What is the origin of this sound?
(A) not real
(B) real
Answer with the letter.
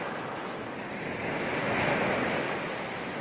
B